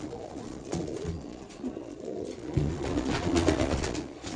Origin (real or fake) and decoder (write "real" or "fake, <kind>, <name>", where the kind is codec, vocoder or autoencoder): fake, vocoder, Vocos